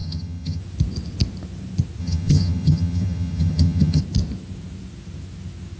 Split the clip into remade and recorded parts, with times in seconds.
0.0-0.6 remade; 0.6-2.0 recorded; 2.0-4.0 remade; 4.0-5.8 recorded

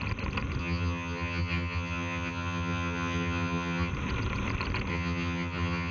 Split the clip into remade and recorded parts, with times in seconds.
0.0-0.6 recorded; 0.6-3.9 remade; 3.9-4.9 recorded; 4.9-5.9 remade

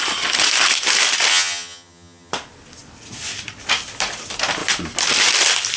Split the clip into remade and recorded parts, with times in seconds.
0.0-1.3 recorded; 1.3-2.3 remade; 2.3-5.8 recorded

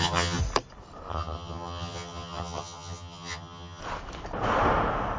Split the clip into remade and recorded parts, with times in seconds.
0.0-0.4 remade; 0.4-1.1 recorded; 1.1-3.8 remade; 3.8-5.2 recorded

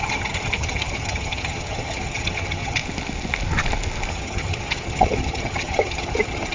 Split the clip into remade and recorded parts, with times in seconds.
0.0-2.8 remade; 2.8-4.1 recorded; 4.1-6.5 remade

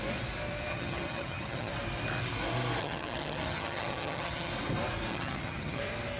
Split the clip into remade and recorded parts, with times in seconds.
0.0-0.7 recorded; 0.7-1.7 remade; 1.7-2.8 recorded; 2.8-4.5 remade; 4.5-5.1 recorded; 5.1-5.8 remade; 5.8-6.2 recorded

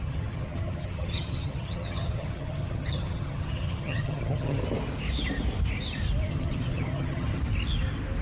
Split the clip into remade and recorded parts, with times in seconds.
0.0-4.6 remade; 4.6-6.3 recorded; 6.3-7.4 remade; 7.4-8.2 recorded

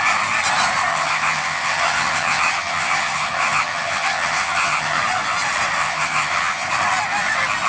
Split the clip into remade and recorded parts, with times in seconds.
0.0-0.9 recorded; 0.9-5.0 remade; 5.0-5.8 recorded; 5.8-6.7 remade; 6.7-7.7 recorded